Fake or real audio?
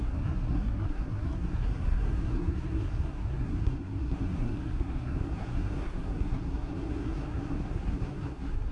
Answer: fake